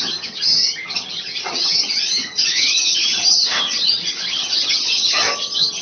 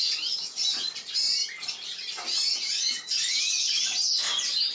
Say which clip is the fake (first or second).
first